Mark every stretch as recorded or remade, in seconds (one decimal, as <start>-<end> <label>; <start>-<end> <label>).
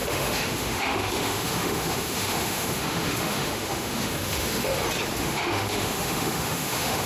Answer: 0.0-4.7 remade; 4.7-5.2 recorded; 5.2-7.1 remade